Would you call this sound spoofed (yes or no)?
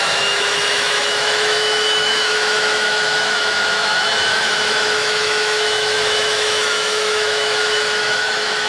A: yes